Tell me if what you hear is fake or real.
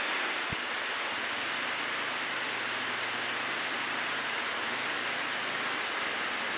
real